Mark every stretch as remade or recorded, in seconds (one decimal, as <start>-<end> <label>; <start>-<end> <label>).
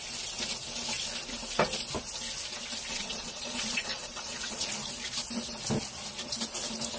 0.0-2.9 recorded; 2.9-4.6 remade; 4.6-7.0 recorded